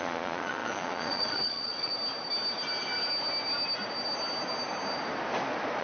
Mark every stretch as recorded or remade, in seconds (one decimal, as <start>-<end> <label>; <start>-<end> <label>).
0.0-1.9 remade; 1.9-5.8 recorded

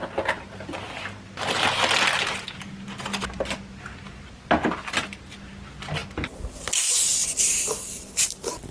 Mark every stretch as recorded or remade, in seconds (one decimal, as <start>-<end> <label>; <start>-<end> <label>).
0.0-7.2 recorded; 7.2-8.7 remade

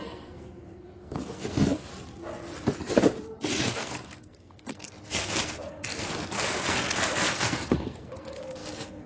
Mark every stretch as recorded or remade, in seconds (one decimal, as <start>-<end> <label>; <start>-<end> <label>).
0.0-1.9 remade; 1.9-3.6 recorded; 3.6-9.1 remade